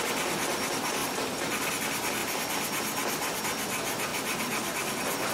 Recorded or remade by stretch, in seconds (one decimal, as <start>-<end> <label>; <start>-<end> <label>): 0.0-1.0 recorded; 1.0-1.7 remade; 1.7-5.3 recorded